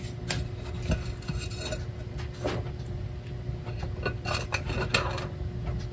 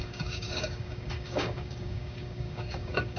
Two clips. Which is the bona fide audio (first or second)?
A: first